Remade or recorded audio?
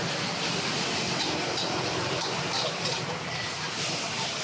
remade